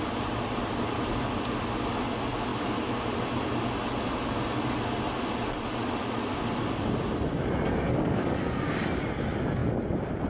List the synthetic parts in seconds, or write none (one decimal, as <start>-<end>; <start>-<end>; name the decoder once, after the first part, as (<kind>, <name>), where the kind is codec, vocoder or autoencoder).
7.9-8.4 (codec, DAC)